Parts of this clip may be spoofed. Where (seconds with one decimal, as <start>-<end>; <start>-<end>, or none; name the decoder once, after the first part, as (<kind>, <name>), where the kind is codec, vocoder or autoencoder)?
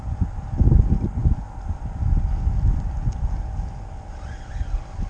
none